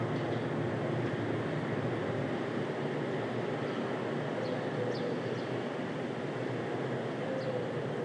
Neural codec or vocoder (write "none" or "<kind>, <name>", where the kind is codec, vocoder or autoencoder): none